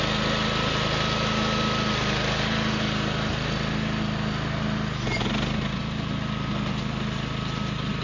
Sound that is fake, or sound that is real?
real